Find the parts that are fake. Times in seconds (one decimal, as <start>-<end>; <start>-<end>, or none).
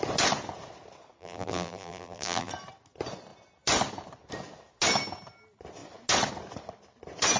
1.2-2.5